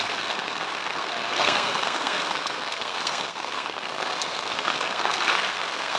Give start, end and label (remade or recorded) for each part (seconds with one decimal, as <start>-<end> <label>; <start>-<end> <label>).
0.0-6.0 remade